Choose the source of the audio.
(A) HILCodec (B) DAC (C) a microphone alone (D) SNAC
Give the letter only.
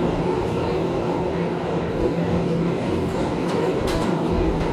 B